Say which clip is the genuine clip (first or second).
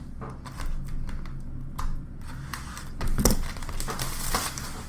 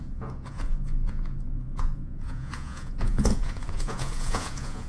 first